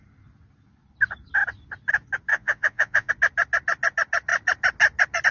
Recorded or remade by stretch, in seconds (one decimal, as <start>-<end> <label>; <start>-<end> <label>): 0.0-2.3 recorded; 2.3-3.1 remade; 3.1-5.3 recorded